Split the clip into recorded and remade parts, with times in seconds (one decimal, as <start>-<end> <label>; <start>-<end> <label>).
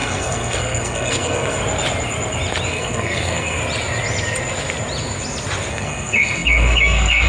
0.0-1.6 remade; 1.6-2.7 recorded; 2.7-3.6 remade; 3.6-5.7 recorded; 5.7-7.3 remade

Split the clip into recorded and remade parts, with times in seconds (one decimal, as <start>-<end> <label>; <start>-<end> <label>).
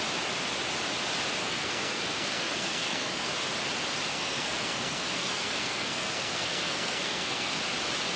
0.0-1.4 recorded; 1.4-3.3 remade; 3.3-4.1 recorded; 4.1-7.6 remade; 7.6-8.2 recorded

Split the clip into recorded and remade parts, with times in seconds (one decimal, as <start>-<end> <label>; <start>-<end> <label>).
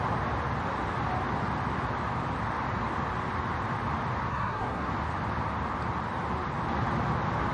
0.0-4.3 recorded; 4.3-4.9 remade; 4.9-7.5 recorded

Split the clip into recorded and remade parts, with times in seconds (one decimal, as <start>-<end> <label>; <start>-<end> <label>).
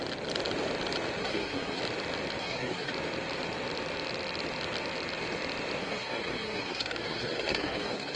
0.0-1.2 recorded; 1.2-1.8 remade; 1.8-2.4 recorded; 2.4-2.9 remade; 2.9-5.8 recorded; 5.8-8.2 remade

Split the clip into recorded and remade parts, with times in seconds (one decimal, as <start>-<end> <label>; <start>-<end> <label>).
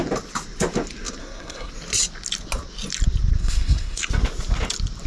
0.0-1.2 recorded; 1.2-1.7 remade; 1.7-3.4 recorded; 3.4-4.1 remade; 4.1-5.1 recorded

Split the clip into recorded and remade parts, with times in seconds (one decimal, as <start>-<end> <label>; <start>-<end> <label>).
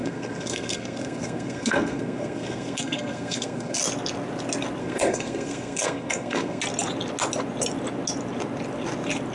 0.0-3.8 remade; 3.8-4.8 recorded; 4.8-6.6 remade; 6.6-9.3 recorded